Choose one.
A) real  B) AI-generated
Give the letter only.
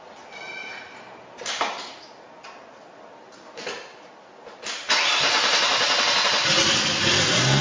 A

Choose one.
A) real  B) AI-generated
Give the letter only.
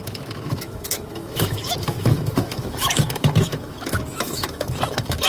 B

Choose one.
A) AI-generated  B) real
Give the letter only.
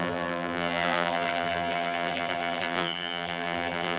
A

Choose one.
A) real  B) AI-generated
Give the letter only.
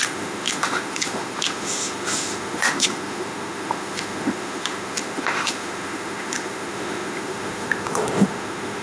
B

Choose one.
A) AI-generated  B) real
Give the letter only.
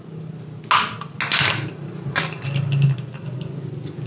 B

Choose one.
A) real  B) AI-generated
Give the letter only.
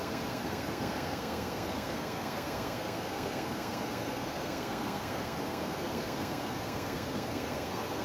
B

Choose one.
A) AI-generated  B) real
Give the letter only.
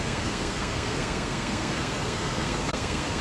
A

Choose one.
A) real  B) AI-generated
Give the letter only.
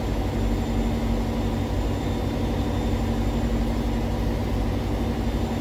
A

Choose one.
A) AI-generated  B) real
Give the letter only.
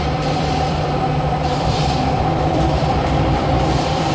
A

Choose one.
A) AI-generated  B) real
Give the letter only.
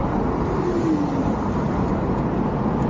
B